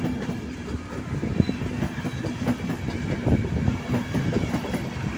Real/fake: real